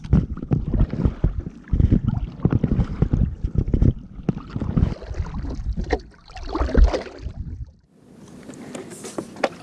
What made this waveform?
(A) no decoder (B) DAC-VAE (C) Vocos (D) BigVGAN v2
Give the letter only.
A